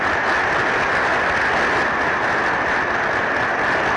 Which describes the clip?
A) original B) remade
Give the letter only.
A